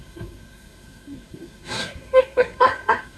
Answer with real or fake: fake